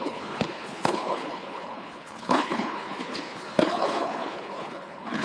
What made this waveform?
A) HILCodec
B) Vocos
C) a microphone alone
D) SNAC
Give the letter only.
A